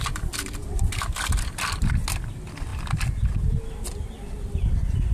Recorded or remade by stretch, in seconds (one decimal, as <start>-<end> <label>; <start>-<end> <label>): 0.0-5.1 recorded